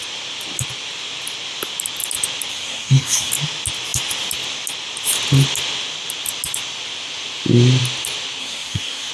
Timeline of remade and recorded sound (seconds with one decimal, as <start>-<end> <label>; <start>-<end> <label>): 0.0-2.5 recorded; 2.5-3.3 remade; 3.3-8.4 recorded; 8.4-9.1 remade